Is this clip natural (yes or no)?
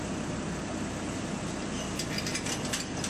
yes